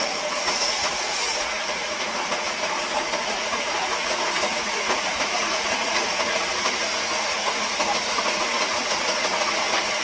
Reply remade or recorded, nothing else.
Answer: remade